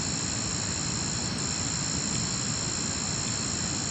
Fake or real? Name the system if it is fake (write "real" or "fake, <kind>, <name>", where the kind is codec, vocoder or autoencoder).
real